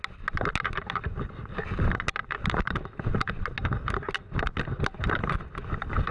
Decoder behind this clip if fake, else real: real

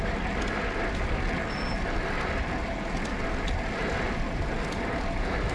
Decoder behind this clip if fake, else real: real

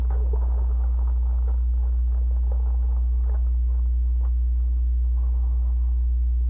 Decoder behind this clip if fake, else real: real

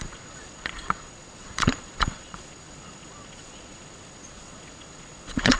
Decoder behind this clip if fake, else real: fake, vocoder, Vocos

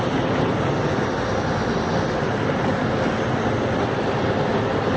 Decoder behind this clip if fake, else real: real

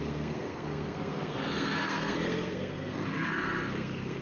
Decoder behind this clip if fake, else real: fake, codec, SNAC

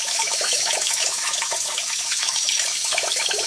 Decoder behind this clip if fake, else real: fake, autoencoder, DAC-VAE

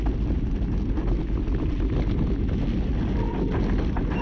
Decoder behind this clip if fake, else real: real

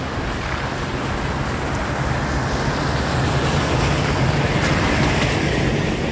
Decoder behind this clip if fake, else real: real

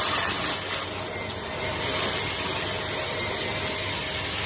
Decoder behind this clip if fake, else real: real